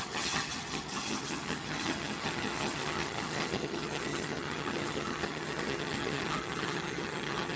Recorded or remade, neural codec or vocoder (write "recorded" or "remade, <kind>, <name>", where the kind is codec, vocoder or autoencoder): remade, vocoder, HiFi-GAN